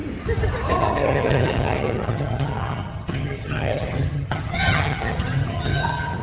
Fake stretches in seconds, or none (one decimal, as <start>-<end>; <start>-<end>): 0.8-6.2